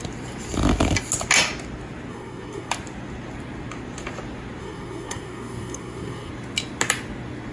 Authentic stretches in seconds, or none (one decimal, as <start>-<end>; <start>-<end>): 0.0-2.1; 2.7-4.6; 6.3-7.5